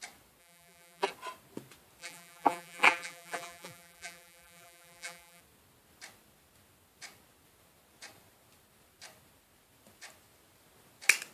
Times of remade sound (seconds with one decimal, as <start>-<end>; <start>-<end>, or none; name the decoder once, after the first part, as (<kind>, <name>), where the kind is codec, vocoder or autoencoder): 0.4-1.1 (vocoder, BigVGAN v2); 2.0-5.4